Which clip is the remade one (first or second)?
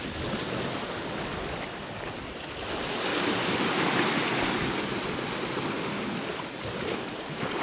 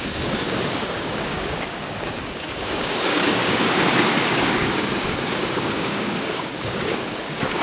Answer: second